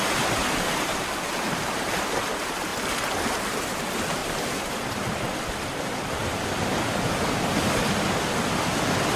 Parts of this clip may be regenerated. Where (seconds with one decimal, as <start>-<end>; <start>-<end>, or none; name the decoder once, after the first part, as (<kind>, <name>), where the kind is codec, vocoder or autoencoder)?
0.4-1.0 (vocoder, BigVGAN v2); 4.2-5.2